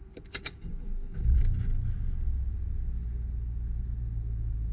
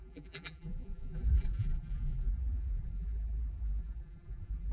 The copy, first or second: second